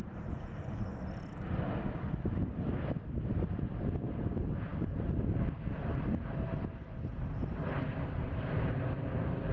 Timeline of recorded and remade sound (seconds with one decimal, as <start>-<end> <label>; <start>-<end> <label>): 0.0-9.5 recorded